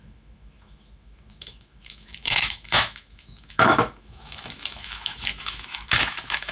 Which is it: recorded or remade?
remade